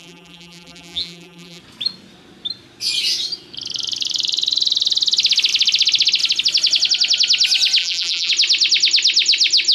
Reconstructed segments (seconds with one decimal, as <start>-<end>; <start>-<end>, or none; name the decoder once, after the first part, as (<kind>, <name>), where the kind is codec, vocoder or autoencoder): 0.0-1.6 (vocoder, BigVGAN v2); 7.8-8.3